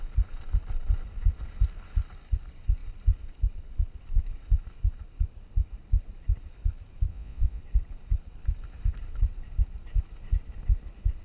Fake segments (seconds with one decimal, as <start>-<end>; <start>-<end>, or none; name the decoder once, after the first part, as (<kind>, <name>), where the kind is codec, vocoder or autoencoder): 7.1-7.6 (vocoder, Vocos)

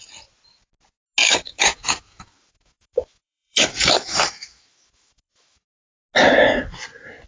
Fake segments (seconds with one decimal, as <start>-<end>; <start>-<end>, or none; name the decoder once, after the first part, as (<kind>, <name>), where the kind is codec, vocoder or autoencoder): 1.2-5.6 (autoencoder, DAC-VAE)

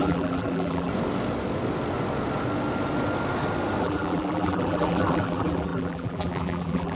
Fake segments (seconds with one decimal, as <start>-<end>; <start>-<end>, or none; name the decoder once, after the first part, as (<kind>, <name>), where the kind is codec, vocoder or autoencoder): 0.0-0.9 (vocoder, BigVGAN v2); 3.8-6.9

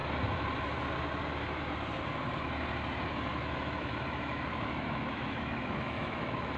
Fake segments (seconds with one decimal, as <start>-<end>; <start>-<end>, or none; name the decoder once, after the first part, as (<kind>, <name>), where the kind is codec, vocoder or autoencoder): 3.3-6.6 (autoencoder, DAC-VAE)

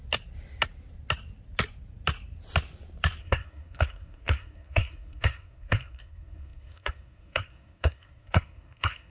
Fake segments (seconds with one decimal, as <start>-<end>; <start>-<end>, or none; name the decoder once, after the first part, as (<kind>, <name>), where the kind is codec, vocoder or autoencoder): 3.2-9.1 (codec, SNAC)